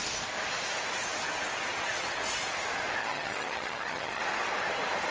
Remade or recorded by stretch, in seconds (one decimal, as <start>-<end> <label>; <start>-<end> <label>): 0.0-3.0 recorded; 3.0-4.2 remade; 4.2-5.1 recorded